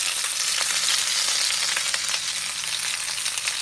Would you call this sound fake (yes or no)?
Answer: no